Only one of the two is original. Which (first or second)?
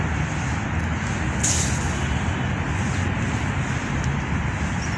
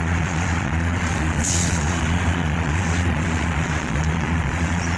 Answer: first